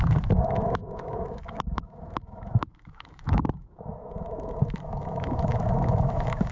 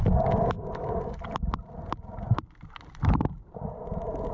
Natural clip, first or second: second